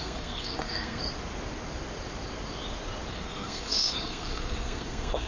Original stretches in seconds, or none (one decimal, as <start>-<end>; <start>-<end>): 1.0-3.1